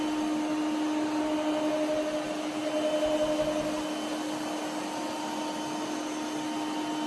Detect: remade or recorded recorded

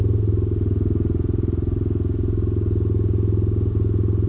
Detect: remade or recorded recorded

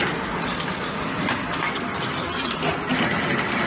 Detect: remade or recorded recorded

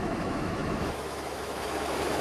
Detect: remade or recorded remade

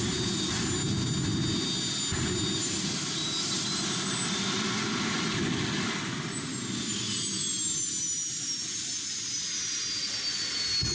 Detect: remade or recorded recorded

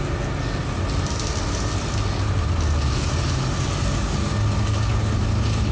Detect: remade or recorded recorded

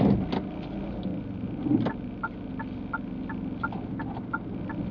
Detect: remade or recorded recorded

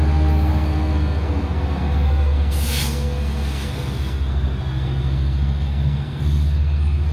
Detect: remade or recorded remade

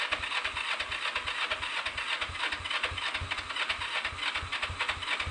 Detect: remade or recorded recorded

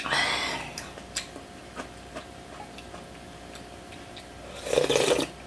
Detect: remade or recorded recorded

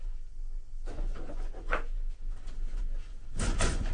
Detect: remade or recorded remade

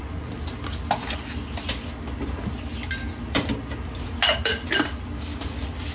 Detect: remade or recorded recorded